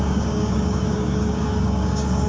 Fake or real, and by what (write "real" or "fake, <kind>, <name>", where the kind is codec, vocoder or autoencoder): fake, codec, DAC